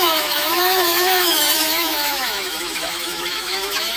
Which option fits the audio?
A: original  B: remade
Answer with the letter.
B